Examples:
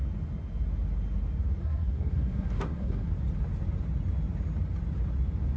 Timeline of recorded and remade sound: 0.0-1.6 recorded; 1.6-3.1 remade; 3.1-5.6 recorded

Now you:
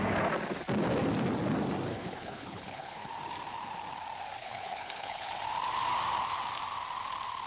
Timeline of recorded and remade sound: 0.0-1.9 recorded; 1.9-3.1 remade; 3.1-4.4 recorded; 4.4-5.3 remade; 5.3-7.5 recorded

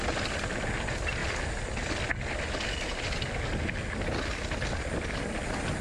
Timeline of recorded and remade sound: 0.0-5.8 recorded